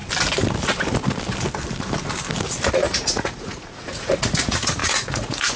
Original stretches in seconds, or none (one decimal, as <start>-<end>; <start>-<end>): 0.0-2.7